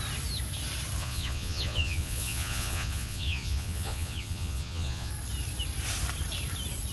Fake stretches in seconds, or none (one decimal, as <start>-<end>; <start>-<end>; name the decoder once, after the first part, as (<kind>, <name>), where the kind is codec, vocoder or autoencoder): 1.0-5.1 (vocoder, Vocos)

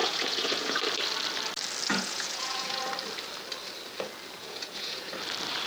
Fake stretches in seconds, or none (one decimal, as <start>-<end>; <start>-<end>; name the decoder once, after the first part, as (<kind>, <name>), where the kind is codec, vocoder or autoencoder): 0.0-0.8 (vocoder, Vocos); 1.9-2.9; 4.4-5.1

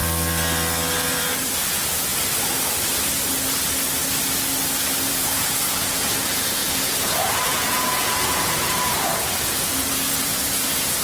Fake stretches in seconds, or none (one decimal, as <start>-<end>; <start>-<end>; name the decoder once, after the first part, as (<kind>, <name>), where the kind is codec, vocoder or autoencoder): 1.7-2.1 (vocoder, Vocos); 5.1-11.0